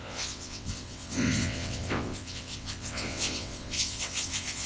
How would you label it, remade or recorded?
remade